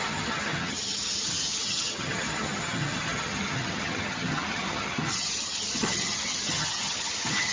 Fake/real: fake